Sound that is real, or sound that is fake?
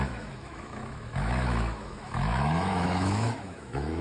fake